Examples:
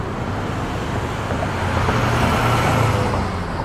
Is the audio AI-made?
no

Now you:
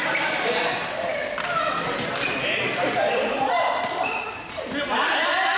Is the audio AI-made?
no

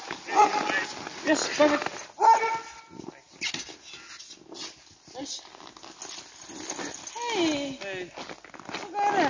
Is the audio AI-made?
no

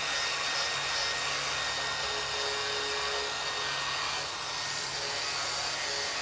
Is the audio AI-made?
no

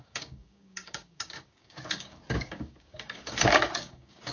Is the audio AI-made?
yes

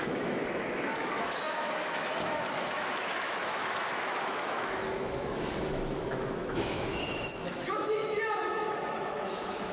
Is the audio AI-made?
yes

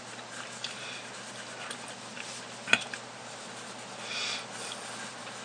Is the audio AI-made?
no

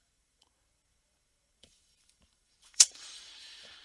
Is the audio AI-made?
yes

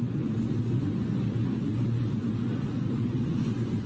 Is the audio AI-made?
yes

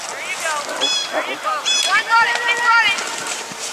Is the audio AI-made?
no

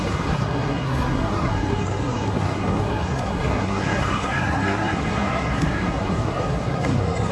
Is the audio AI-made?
yes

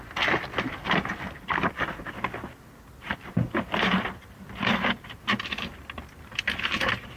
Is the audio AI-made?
no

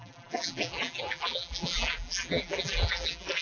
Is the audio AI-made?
yes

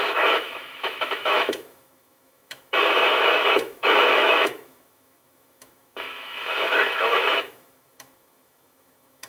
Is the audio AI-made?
yes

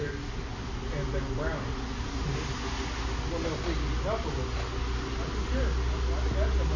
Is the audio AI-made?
no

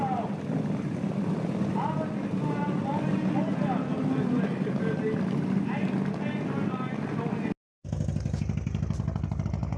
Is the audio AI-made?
no